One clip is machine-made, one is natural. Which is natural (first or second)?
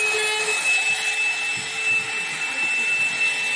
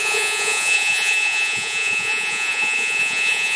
first